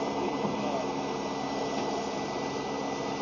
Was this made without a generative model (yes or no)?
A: yes